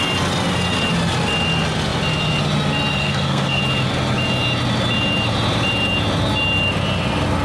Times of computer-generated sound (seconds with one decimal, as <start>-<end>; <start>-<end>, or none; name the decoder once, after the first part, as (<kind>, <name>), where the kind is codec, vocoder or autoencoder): 2.9-3.6 (codec, SNAC)